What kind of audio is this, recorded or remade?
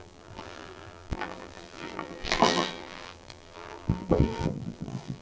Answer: remade